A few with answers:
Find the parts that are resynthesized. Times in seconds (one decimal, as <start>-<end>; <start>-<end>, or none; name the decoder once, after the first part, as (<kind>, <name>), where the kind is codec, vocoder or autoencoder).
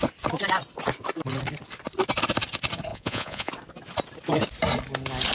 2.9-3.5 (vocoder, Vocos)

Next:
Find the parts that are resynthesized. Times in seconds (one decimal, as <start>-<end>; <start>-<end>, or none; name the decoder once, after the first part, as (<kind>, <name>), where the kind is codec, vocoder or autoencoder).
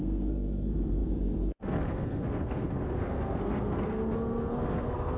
0.0-5.2 (codec, SNAC)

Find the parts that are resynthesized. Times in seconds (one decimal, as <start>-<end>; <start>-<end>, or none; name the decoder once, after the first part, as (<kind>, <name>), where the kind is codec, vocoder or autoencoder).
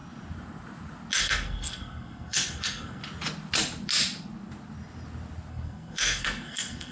1.2-3.0 (codec, SNAC); 5.5-6.9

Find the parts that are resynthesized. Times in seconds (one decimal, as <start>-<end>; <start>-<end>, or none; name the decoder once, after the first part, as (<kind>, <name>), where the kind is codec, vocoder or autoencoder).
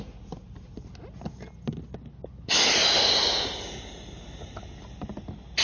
none